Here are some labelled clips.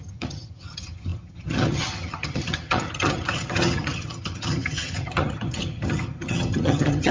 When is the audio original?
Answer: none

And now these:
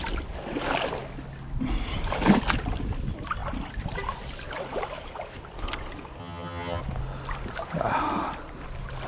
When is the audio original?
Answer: 0.0-6.2; 6.8-9.1